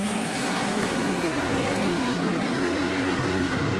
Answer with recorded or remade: remade